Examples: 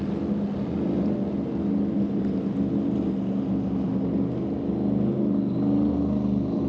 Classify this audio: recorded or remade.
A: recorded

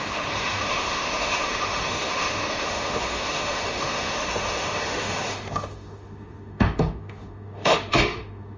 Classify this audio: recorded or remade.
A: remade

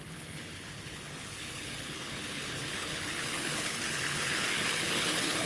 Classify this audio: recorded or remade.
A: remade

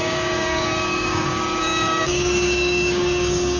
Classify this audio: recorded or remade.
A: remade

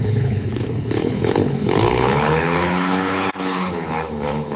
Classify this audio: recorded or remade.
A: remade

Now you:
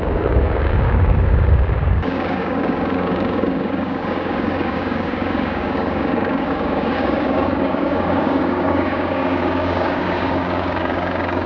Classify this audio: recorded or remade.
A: remade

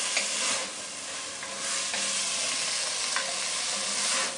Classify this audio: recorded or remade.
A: recorded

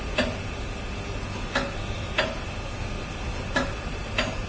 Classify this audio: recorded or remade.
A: recorded